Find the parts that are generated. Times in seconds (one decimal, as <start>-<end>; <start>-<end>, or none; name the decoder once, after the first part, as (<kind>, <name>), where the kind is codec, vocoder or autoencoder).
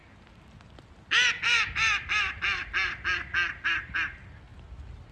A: none